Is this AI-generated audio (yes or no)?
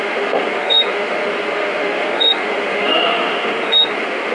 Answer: yes